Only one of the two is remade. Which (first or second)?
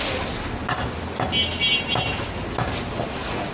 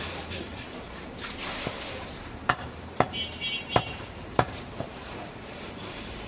second